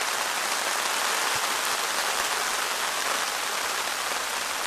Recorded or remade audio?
recorded